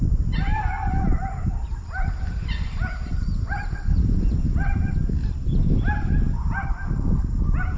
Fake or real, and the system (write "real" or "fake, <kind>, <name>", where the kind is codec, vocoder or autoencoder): real